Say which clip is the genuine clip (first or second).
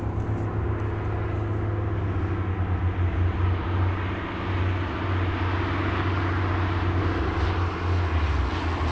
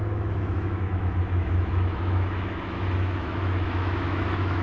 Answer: first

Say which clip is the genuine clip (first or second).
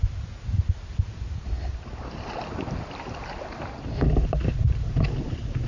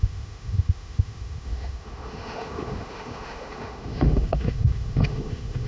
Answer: first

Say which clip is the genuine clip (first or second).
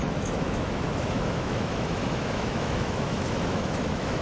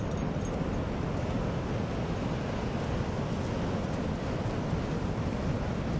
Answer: second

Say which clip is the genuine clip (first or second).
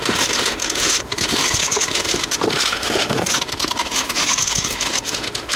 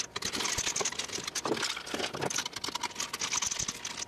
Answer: second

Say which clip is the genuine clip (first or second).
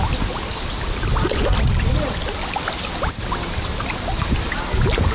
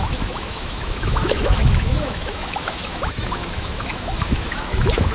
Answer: first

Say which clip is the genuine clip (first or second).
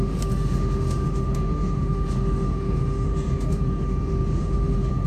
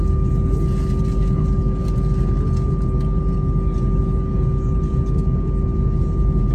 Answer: second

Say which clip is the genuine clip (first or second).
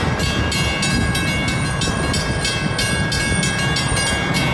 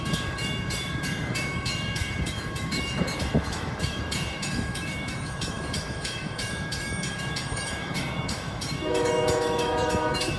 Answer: first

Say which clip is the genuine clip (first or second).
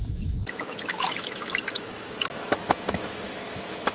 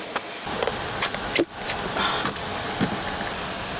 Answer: second